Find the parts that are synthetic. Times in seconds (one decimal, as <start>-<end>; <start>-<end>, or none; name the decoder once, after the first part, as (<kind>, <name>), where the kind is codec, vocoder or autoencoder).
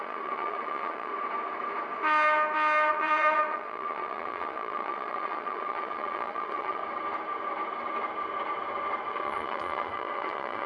0.0-1.1 (vocoder, Vocos); 2.9-6.8; 9.1-10.7